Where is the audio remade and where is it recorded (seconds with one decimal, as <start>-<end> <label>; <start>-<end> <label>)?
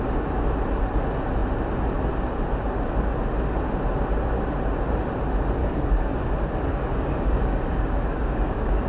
0.0-5.6 recorded; 5.6-6.3 remade; 6.3-6.7 recorded; 6.7-8.9 remade